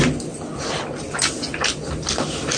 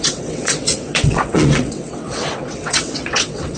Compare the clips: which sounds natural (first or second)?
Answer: first